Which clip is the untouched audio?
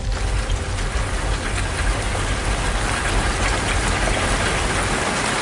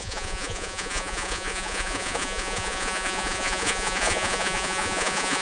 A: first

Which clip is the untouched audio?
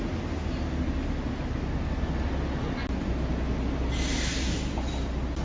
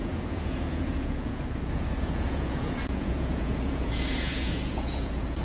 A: first